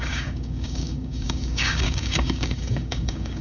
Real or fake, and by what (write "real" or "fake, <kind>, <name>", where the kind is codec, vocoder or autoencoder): fake, codec, DAC